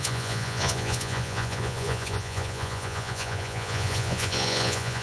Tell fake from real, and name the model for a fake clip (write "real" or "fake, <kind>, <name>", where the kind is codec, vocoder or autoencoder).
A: fake, vocoder, Vocos